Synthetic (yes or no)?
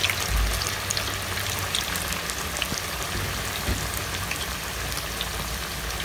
no